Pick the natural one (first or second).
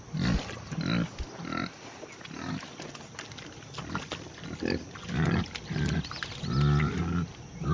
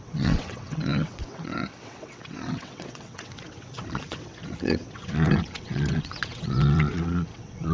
first